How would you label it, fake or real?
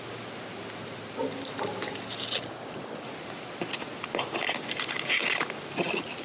real